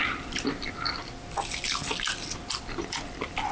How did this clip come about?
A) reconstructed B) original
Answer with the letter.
B